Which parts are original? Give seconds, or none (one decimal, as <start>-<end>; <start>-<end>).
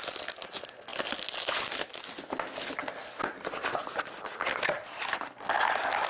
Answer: 0.0-6.1